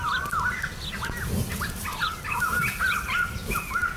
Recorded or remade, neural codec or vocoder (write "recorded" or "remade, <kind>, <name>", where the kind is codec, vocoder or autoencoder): recorded